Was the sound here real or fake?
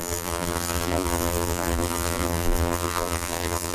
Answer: fake